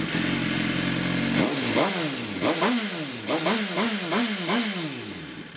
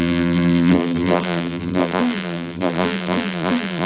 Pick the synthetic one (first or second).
second